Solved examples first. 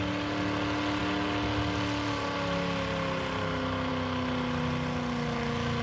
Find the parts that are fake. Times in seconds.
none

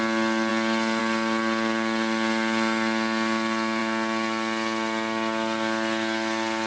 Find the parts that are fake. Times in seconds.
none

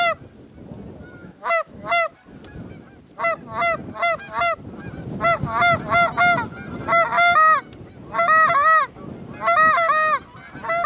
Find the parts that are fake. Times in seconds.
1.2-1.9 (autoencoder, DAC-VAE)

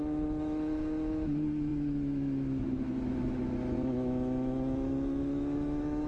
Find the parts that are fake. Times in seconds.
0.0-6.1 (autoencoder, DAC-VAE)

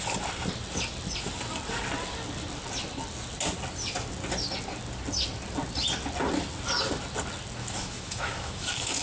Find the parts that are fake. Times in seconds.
7.6-9.0 (autoencoder, DAC-VAE)

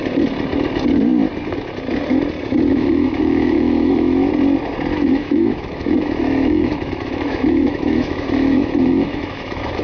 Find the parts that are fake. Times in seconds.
2.7-4.3 (autoencoder, DAC-VAE); 4.9-9.8